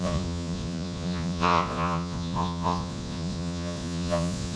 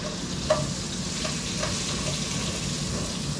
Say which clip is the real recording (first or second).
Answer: second